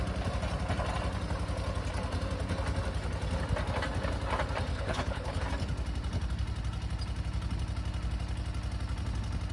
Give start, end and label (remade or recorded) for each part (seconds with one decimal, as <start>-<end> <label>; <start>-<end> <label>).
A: 0.0-4.7 recorded; 4.7-5.4 remade; 5.4-9.5 recorded